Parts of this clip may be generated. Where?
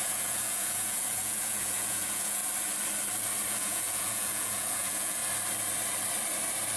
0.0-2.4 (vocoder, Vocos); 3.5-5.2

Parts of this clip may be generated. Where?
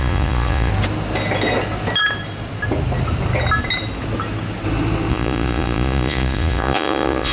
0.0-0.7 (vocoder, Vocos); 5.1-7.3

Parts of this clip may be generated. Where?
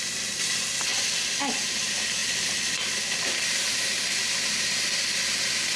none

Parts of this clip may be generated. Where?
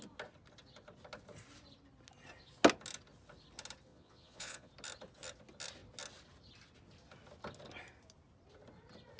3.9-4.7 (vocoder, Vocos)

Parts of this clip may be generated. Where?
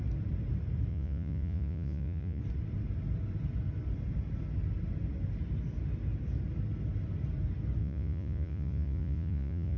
0.9-2.4 (vocoder, Vocos); 7.8-9.8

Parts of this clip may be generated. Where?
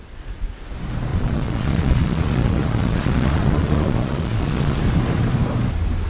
1.1-4.8 (vocoder, Vocos)